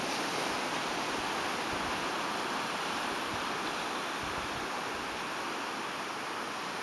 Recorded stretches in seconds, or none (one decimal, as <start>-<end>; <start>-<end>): 0.0-6.8